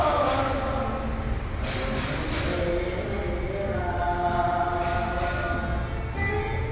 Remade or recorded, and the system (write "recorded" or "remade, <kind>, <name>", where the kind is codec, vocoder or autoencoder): recorded